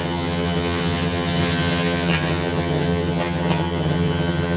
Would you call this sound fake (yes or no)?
yes